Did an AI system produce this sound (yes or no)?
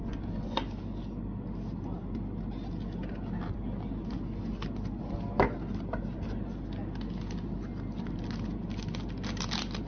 no